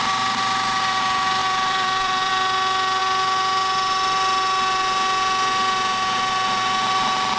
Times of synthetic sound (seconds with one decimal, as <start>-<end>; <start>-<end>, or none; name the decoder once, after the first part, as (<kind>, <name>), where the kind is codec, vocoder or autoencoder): 1.4-2.3 (vocoder, BigVGAN v2)